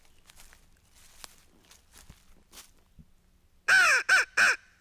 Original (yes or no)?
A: yes